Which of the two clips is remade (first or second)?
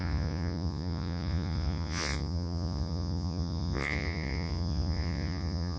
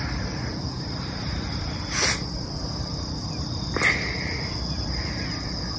first